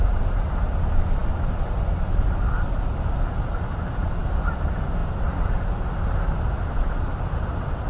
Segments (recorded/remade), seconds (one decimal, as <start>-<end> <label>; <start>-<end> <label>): 0.0-7.9 recorded